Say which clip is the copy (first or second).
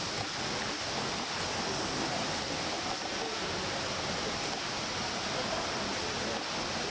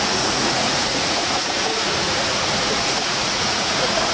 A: second